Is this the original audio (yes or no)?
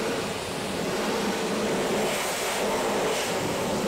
yes